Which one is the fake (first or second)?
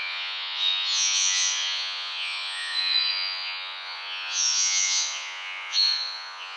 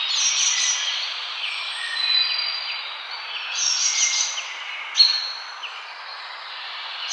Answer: first